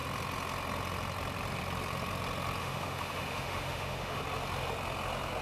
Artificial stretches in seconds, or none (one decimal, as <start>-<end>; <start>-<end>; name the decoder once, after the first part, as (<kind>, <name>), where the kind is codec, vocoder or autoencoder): 2.6-4.2 (autoencoder, DAC-VAE)